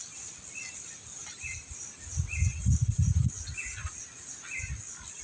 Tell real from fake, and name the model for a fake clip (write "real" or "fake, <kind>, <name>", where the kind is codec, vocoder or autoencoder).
real